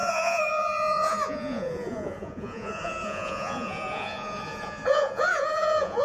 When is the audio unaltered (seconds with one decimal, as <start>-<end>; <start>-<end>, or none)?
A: none